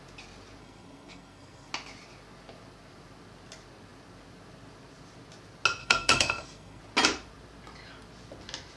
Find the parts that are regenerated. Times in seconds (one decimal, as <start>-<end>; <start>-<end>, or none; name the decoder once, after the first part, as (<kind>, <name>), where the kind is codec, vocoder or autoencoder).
0.6-1.7 (codec, SNAC); 5.8-6.8